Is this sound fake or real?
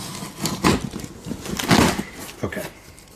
real